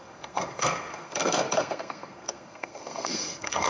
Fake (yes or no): yes